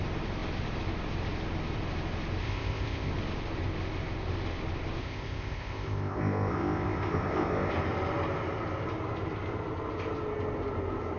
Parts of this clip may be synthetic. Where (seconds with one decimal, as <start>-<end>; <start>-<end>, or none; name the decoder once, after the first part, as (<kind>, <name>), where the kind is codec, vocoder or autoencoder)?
2.4-3.1 (codec, ZipCodec); 5.0-7.7